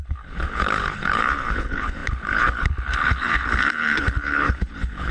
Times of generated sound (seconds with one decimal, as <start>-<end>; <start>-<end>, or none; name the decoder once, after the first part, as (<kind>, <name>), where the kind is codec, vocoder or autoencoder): 0.0-5.1 (codec, HILCodec)